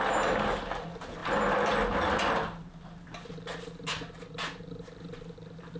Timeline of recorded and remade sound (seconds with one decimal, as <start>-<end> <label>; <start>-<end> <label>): 0.0-5.8 recorded